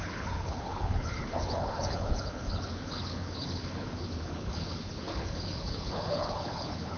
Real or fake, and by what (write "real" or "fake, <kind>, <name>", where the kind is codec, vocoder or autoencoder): fake, codec, HILCodec